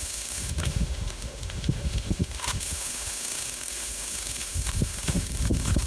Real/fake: fake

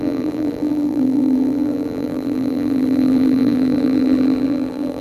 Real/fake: fake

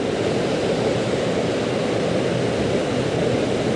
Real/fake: real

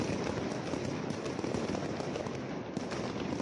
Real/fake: real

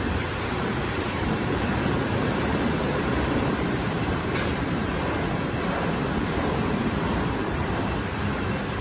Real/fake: fake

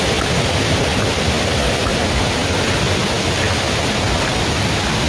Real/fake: real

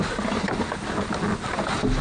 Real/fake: real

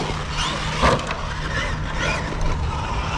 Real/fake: real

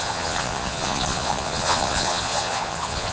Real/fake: fake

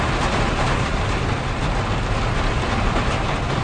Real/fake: real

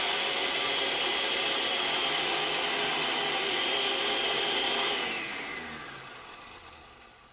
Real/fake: real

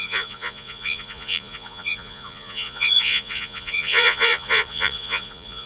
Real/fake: fake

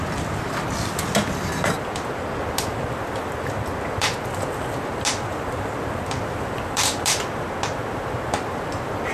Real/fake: real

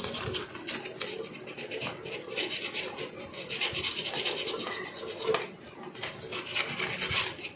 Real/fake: real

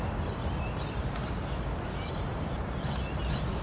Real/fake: real